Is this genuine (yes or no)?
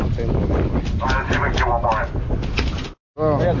yes